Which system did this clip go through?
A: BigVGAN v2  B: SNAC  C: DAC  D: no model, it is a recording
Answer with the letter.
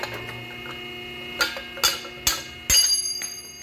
D